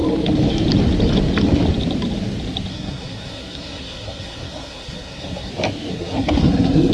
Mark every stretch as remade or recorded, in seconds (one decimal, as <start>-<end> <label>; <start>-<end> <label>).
0.0-2.7 recorded; 2.7-5.5 remade; 5.5-5.9 recorded; 5.9-6.9 remade